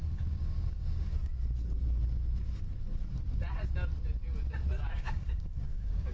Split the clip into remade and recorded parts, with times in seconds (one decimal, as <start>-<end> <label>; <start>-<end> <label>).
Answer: 0.0-1.2 remade; 1.2-4.9 recorded; 4.9-6.1 remade